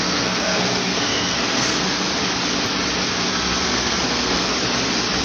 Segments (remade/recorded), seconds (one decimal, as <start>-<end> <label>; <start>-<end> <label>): 0.0-2.1 remade; 2.1-3.3 recorded; 3.3-4.5 remade; 4.5-5.2 recorded